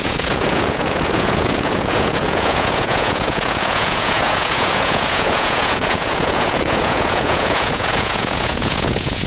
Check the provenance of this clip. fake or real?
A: fake